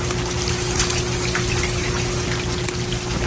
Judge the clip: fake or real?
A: real